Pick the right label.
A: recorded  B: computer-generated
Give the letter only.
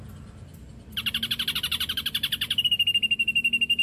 A